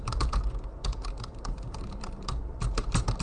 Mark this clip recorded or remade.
remade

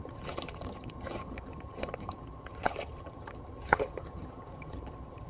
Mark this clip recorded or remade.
remade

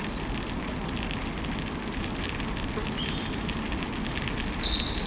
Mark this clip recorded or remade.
recorded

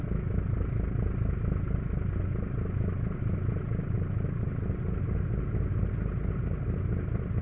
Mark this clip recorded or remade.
recorded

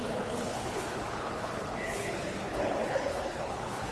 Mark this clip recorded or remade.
remade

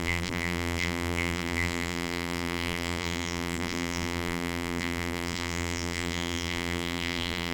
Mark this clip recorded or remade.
remade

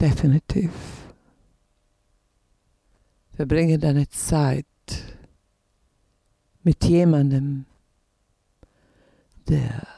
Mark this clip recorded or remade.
recorded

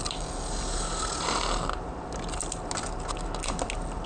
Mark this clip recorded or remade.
recorded